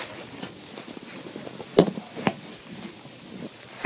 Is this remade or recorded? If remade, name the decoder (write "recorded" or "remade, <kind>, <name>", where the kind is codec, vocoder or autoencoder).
recorded